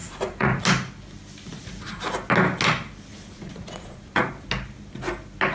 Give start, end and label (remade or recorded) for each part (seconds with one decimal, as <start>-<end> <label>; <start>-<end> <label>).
0.0-0.6 remade; 0.6-3.1 recorded; 3.1-4.3 remade; 4.3-5.5 recorded